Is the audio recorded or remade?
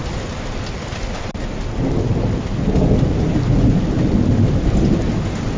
recorded